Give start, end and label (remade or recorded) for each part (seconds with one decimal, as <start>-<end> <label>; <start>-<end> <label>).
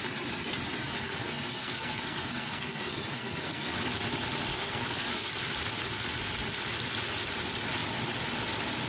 0.0-1.0 recorded; 1.0-3.7 remade; 3.7-4.5 recorded; 4.5-5.3 remade; 5.3-8.9 recorded